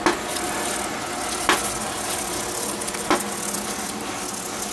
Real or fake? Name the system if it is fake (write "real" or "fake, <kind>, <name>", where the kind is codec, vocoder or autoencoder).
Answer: real